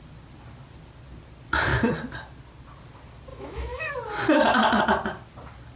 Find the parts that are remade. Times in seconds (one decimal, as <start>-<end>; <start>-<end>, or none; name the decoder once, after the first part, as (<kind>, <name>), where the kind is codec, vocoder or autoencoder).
3.3-3.9 (autoencoder, DAC-VAE)